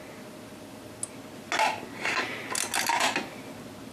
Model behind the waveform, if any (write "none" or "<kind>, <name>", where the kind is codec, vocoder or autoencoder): none